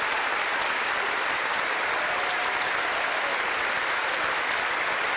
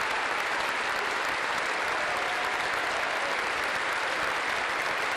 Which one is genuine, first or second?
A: first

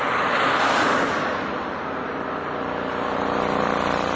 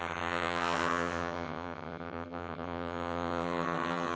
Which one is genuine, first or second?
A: first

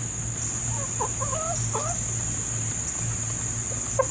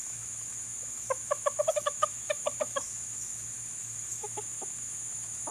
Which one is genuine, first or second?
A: first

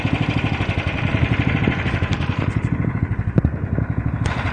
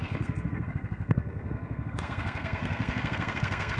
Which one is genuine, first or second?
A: first